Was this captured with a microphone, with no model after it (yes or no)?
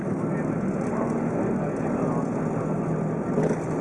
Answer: yes